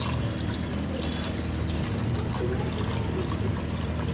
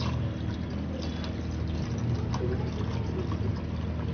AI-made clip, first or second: first